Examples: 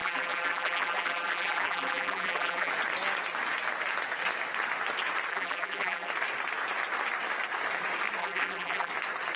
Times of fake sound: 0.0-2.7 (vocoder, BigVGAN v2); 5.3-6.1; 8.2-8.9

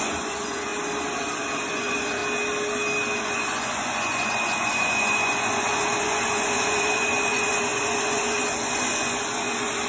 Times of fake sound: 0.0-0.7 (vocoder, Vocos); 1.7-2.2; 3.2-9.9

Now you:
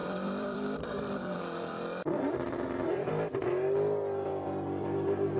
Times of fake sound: 0.0-3.1 (vocoder, BigVGAN v2)

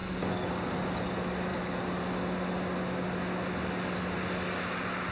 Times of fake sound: none

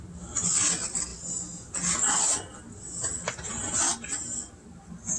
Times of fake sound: none

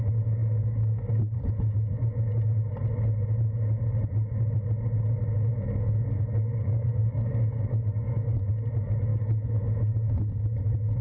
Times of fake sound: 0.4-1.4 (codec, DAC); 5.5-8.4; 9.1-10.2

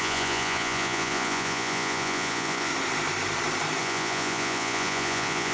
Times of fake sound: 0.0-2.7 (vocoder, Vocos); 3.8-5.5